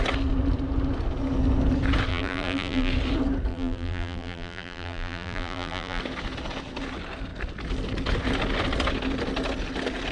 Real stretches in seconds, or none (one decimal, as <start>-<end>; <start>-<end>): 0.0-2.1; 2.9-3.5; 6.0-10.1